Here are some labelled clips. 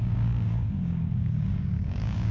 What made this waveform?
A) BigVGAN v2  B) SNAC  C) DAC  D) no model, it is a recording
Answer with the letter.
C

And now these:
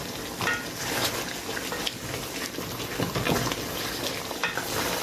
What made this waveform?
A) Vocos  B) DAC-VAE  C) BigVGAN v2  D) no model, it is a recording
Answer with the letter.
D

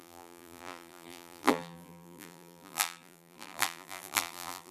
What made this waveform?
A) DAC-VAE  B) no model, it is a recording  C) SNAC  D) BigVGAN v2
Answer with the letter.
D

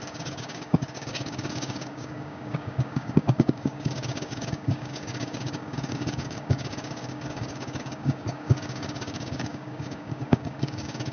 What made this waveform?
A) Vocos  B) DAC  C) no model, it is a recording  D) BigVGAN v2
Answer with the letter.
B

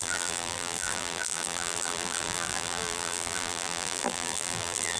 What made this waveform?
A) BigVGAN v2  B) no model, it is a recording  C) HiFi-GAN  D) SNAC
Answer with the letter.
A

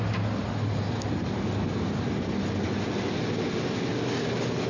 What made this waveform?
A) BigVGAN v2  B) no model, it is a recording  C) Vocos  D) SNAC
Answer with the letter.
B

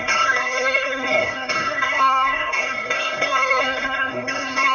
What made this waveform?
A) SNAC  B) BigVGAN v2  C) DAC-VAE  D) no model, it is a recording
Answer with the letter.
A